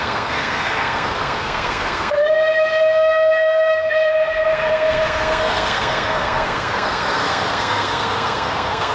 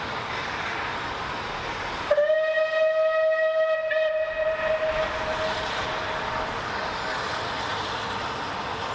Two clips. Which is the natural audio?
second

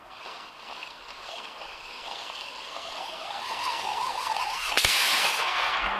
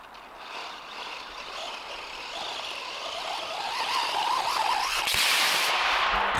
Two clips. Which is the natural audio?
second